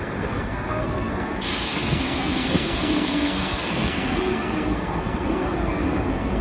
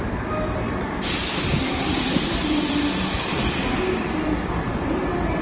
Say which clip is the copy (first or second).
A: first